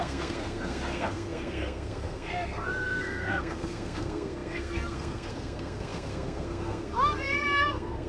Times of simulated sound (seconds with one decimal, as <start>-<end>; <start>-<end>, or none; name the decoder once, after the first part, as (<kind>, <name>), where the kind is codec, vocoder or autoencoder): 0.0-8.1 (codec, SNAC)